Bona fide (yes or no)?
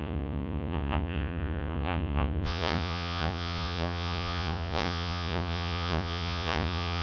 no